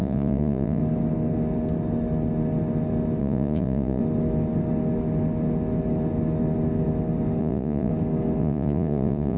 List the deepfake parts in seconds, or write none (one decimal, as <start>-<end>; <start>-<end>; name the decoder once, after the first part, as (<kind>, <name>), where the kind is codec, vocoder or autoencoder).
0.0-0.8 (vocoder, Vocos); 3.2-4.0; 7.4-7.9; 8.4-9.4